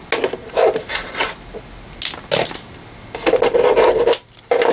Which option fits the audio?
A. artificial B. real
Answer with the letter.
B